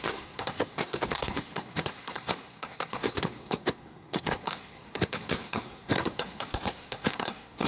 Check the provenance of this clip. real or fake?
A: fake